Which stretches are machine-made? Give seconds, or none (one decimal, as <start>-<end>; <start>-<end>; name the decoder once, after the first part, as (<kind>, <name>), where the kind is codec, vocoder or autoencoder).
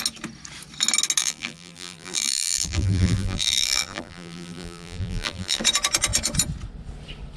1.2-5.6 (vocoder, BigVGAN v2)